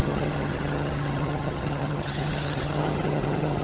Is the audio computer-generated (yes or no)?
yes